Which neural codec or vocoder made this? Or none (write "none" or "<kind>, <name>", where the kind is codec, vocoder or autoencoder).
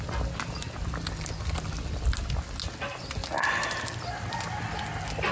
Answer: none